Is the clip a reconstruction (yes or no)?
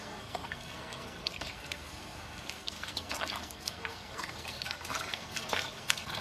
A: yes